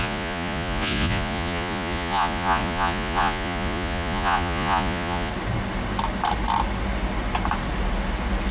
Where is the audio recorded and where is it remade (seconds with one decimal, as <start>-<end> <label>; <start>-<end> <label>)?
0.0-5.3 remade; 5.3-8.5 recorded

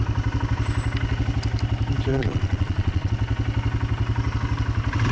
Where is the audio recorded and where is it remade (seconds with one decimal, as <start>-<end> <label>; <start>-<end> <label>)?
0.0-2.1 recorded; 2.1-3.1 remade; 3.1-5.1 recorded